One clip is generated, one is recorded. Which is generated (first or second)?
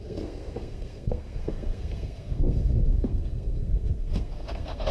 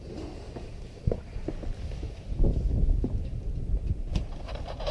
first